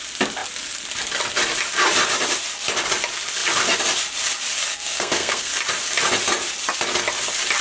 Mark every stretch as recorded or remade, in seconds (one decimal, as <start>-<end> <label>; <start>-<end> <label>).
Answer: 0.0-4.7 recorded; 4.7-5.5 remade; 5.5-7.6 recorded